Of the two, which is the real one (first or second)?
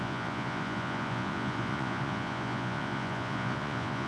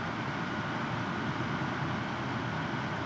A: second